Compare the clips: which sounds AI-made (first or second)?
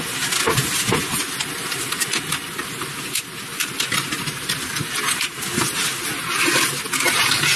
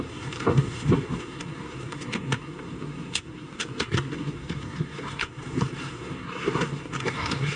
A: second